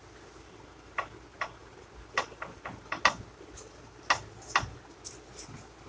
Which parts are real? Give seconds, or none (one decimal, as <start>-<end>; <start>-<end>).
0.0-5.9